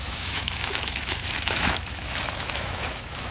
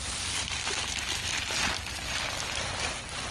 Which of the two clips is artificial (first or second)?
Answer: first